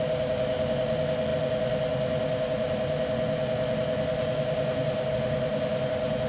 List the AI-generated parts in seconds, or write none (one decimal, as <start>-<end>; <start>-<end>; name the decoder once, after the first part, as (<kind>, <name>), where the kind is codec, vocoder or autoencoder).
none